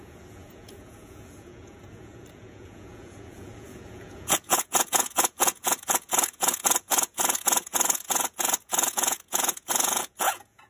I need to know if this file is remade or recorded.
remade